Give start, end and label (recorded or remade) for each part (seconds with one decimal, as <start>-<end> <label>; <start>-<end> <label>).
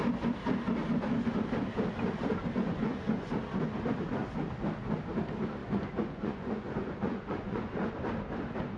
0.0-2.6 recorded; 2.6-3.3 remade; 3.3-5.6 recorded; 5.6-7.9 remade; 7.9-8.8 recorded